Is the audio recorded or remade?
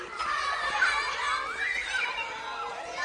recorded